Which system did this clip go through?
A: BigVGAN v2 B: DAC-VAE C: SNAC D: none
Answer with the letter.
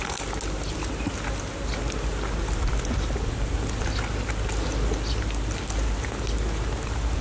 D